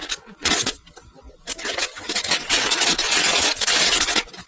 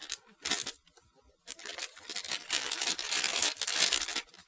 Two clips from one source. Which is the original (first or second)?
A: second